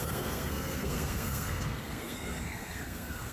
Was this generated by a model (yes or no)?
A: yes